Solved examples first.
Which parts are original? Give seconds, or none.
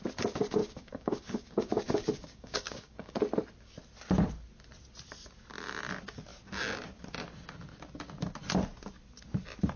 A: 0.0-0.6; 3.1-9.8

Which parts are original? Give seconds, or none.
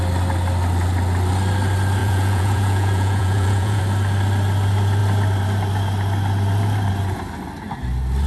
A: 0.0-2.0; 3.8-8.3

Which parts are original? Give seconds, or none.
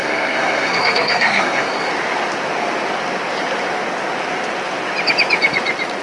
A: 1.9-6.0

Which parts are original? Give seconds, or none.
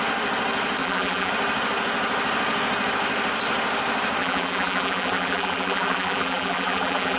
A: 0.0-0.8; 1.3-4.2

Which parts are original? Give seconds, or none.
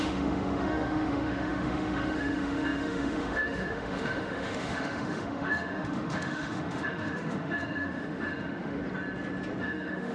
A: 8.8-9.6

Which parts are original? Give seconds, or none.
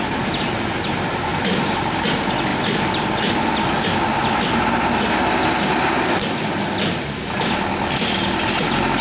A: 0.0-1.3; 2.0-2.5; 3.2-9.0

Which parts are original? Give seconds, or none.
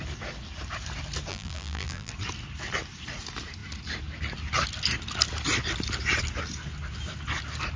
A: 0.0-1.3; 2.1-7.8